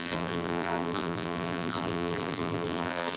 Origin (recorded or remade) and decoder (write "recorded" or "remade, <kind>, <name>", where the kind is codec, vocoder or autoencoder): remade, vocoder, BigVGAN v2